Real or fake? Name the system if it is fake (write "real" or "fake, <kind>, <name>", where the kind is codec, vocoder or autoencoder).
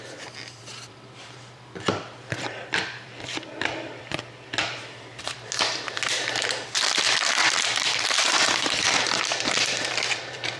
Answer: fake, vocoder, BigVGAN v2